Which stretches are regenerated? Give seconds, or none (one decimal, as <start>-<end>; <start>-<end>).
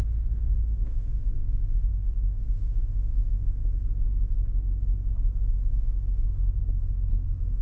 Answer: 0.0-3.6; 5.7-6.6